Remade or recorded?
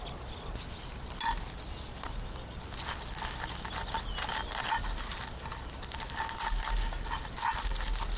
recorded